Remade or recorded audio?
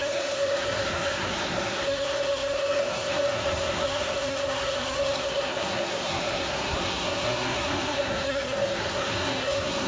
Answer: remade